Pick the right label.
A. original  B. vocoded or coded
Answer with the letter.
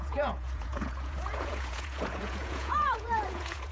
B